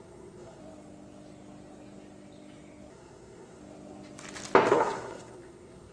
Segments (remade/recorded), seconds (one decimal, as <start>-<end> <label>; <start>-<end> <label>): 0.0-0.6 remade; 0.6-2.9 recorded; 2.9-3.6 remade; 3.6-4.7 recorded; 4.7-5.9 remade